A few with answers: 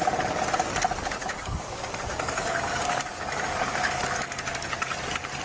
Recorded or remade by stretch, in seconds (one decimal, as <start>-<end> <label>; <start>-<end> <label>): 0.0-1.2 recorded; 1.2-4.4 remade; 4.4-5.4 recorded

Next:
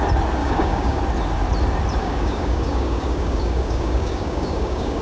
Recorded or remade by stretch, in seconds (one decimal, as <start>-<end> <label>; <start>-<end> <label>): 0.0-0.4 recorded; 0.4-1.0 remade; 1.0-2.0 recorded; 2.0-5.0 remade

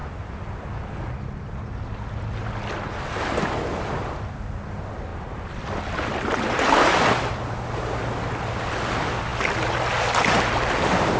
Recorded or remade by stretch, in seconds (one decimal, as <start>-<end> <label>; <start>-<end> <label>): 0.0-11.2 recorded